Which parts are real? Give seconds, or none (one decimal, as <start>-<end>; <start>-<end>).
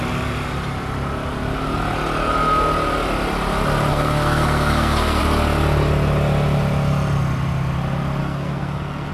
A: 0.0-3.9; 5.2-8.2